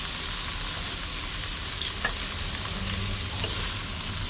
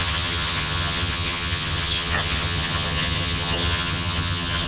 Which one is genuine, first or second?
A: first